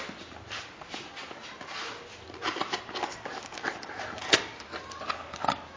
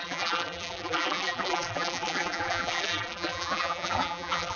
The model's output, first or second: second